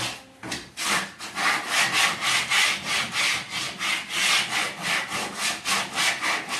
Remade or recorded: recorded